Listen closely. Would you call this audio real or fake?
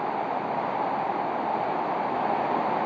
real